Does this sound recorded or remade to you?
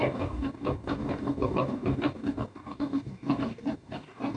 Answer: remade